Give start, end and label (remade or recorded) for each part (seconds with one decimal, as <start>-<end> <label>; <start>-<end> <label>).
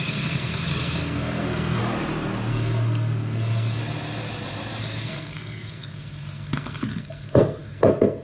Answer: 0.0-1.8 remade; 1.8-2.5 recorded; 2.5-3.8 remade; 3.8-4.8 recorded; 4.8-8.2 remade